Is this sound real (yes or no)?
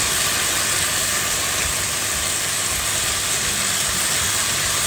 yes